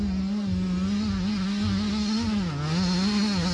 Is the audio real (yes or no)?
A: yes